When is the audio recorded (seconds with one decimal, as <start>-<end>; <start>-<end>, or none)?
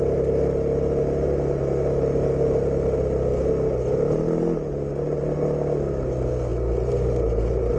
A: 0.0-7.8